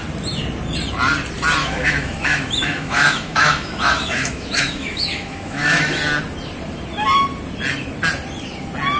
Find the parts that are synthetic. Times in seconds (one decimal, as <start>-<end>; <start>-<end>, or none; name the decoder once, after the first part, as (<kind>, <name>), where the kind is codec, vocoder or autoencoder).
1.6-6.0 (autoencoder, DAC-VAE)